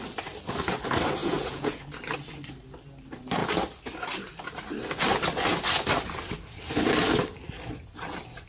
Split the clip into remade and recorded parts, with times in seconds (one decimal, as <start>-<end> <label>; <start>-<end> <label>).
0.0-1.2 recorded; 1.2-1.8 remade; 1.8-8.5 recorded

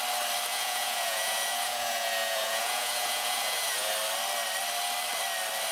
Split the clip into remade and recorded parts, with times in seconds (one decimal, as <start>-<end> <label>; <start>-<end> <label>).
0.0-0.5 recorded; 0.5-3.9 remade; 3.9-5.7 recorded

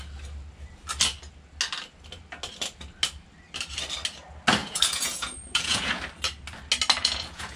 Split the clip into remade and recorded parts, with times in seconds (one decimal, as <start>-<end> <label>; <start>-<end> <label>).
0.0-4.6 recorded; 4.6-6.0 remade; 6.0-7.0 recorded; 7.0-7.6 remade

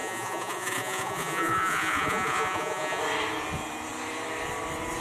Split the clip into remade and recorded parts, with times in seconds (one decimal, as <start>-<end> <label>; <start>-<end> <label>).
0.0-3.0 remade; 3.0-5.0 recorded

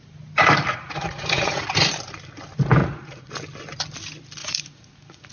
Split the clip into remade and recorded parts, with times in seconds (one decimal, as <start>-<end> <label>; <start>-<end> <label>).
0.0-0.7 recorded; 0.7-1.6 remade; 1.6-2.8 recorded; 2.8-3.3 remade; 3.3-4.4 recorded; 4.4-5.3 remade

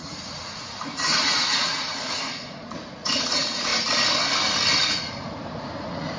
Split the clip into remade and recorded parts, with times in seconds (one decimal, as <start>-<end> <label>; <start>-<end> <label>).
0.0-3.7 remade; 3.7-4.8 recorded; 4.8-6.2 remade